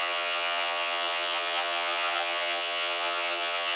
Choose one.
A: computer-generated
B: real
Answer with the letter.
A